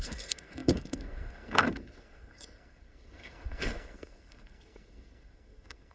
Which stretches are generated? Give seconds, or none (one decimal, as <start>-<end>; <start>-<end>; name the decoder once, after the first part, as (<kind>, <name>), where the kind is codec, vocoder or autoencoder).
0.0-5.9 (codec, SNAC)